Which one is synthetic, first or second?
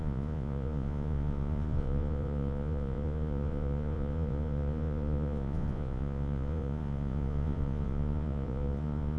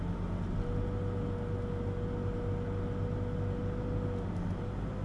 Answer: first